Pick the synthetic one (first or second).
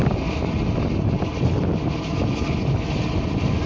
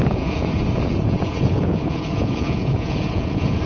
second